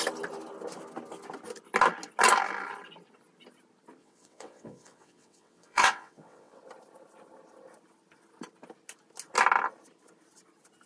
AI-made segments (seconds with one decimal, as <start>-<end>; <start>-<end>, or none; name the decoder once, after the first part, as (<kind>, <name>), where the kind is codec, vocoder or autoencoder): 4.0-6.6 (vocoder, WaveNeXt)